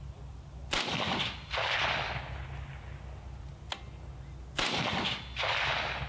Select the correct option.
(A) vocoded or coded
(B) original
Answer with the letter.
B